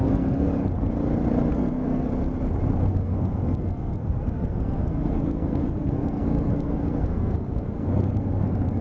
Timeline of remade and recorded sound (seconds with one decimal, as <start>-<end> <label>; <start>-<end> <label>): 0.0-0.5 remade; 0.5-1.5 recorded; 1.5-2.1 remade; 2.1-2.8 recorded; 2.8-8.8 remade